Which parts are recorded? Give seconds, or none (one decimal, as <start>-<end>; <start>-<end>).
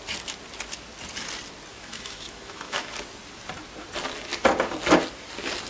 0.0-1.7; 2.9-5.7